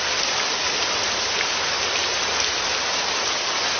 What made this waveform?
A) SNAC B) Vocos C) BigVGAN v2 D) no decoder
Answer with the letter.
D